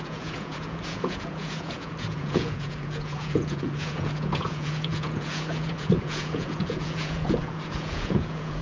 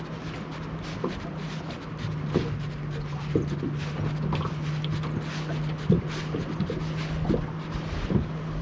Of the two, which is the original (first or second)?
second